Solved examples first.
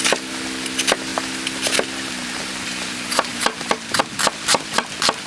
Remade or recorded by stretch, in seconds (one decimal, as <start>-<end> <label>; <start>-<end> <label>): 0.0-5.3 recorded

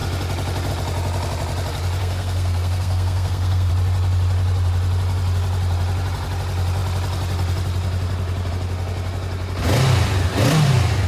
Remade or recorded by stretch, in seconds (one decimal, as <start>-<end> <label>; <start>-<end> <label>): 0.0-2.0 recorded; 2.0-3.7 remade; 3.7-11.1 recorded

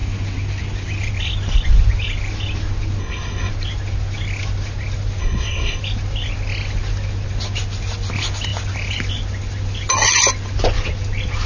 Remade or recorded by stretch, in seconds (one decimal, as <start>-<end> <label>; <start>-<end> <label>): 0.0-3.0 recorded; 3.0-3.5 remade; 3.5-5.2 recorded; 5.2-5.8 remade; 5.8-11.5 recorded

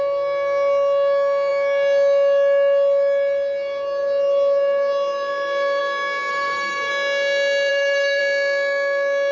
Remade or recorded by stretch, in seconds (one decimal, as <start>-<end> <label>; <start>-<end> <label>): 0.0-6.3 recorded; 6.3-6.9 remade; 6.9-7.7 recorded; 7.7-8.2 remade; 8.2-9.3 recorded

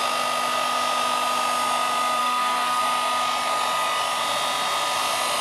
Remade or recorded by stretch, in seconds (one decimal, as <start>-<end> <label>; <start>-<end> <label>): 0.0-2.2 recorded; 2.2-2.8 remade; 2.8-5.4 recorded

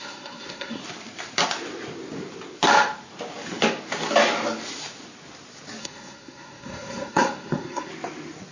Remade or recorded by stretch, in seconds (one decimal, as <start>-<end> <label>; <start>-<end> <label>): 0.0-0.8 remade; 0.8-5.8 recorded; 5.8-7.9 remade; 7.9-8.5 recorded

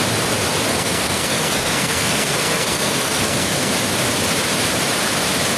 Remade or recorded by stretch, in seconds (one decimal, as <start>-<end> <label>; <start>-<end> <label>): 0.0-0.7 recorded; 0.7-3.7 remade; 3.7-5.6 recorded